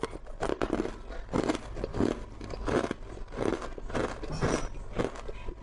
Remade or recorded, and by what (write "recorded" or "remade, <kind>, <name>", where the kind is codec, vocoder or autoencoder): recorded